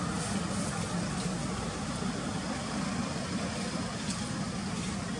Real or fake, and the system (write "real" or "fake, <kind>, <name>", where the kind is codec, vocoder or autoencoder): real